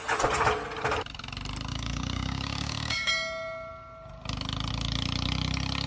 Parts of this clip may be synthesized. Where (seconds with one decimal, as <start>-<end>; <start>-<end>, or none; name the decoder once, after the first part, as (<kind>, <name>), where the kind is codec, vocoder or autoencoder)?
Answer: 1.7-3.1 (codec, DAC)